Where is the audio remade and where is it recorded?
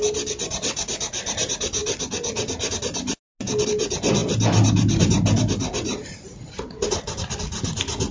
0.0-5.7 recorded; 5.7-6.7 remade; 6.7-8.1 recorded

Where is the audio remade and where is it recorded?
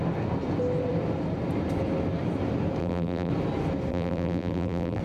0.0-2.8 recorded; 2.8-3.3 remade; 3.3-3.9 recorded; 3.9-5.0 remade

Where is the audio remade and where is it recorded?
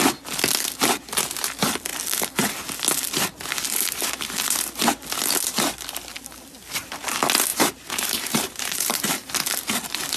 0.0-7.5 recorded; 7.5-9.3 remade; 9.3-10.2 recorded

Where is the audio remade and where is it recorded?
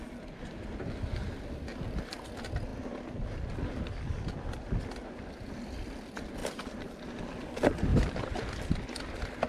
0.0-7.9 recorded; 7.9-8.7 remade; 8.7-9.5 recorded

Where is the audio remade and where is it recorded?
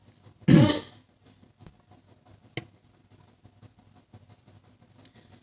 0.0-5.4 recorded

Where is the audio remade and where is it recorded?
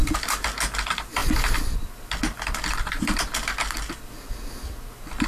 0.0-1.2 recorded; 1.2-4.3 remade; 4.3-5.3 recorded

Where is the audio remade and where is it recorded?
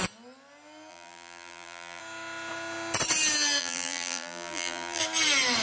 0.0-0.9 recorded; 0.9-2.0 remade; 2.0-3.6 recorded; 3.6-5.0 remade; 5.0-5.6 recorded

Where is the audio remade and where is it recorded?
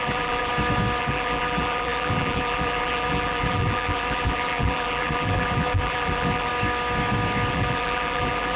0.0-0.5 remade; 0.5-1.0 recorded; 1.0-6.5 remade; 6.5-7.5 recorded; 7.5-8.6 remade